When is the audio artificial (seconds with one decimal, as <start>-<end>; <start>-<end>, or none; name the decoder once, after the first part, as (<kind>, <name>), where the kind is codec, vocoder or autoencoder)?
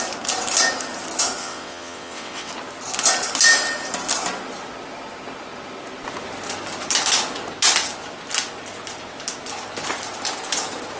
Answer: 1.4-2.5 (vocoder, WaveNeXt)